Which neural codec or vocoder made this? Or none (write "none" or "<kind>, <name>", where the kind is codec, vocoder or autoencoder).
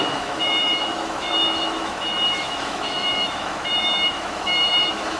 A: autoencoder, DAC-VAE